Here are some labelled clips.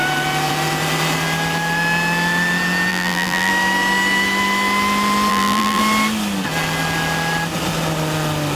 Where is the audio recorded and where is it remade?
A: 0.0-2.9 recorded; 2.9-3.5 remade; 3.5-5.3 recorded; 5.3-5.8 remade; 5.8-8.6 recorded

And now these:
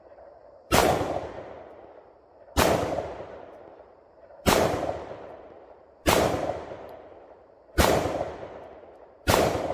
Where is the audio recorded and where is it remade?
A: 0.0-0.8 remade; 0.8-2.6 recorded; 2.6-9.7 remade